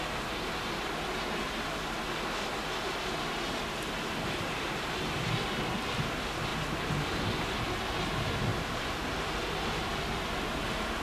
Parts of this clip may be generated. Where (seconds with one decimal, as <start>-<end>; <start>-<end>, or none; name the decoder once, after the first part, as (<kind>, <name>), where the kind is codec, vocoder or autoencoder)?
none